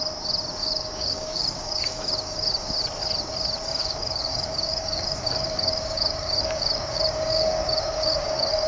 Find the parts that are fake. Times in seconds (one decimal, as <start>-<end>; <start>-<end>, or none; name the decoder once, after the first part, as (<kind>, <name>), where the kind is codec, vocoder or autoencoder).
0.6-2.7 (codec, DAC); 3.7-8.7